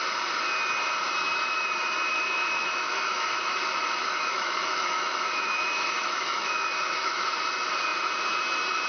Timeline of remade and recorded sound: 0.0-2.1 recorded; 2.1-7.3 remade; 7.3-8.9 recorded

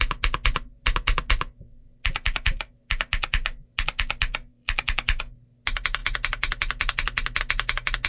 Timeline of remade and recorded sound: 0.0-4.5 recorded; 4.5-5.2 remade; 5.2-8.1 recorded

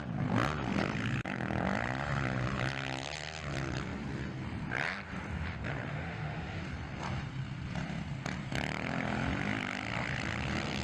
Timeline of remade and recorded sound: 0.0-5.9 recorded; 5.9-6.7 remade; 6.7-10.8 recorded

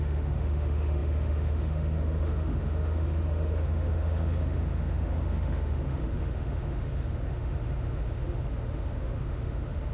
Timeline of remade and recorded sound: 0.0-9.9 remade

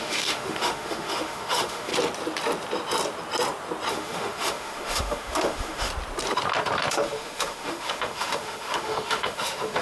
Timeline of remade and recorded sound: 0.0-1.9 remade; 1.9-3.9 recorded; 3.9-5.9 remade; 5.9-6.9 recorded; 6.9-9.8 remade

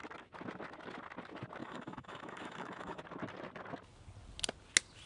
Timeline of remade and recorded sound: 0.0-1.6 recorded; 1.6-3.0 remade; 3.0-5.1 recorded